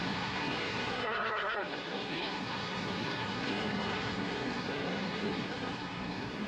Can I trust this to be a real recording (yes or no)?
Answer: no